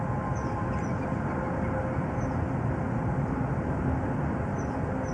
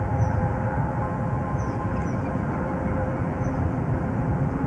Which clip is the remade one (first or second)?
second